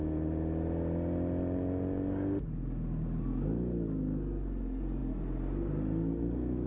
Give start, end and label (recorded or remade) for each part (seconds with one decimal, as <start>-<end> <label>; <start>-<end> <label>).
0.0-6.7 recorded